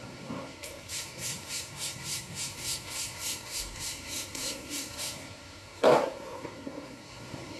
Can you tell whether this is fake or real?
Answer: fake